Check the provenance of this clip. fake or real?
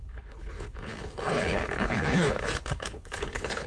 fake